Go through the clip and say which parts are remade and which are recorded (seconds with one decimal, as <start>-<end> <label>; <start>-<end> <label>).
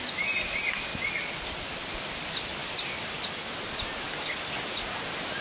0.0-5.4 recorded